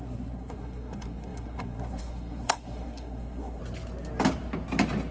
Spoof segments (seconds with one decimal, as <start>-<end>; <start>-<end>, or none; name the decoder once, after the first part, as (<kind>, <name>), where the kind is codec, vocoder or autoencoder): 0.0-3.6 (codec, SNAC)